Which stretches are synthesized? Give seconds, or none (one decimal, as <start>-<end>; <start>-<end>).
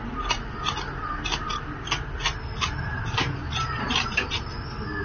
3.4-4.3